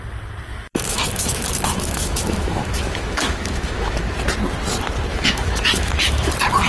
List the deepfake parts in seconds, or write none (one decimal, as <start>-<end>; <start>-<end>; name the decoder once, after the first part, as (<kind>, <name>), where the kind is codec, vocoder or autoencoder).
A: 0.5-4.0 (autoencoder, DAC-VAE); 5.1-6.3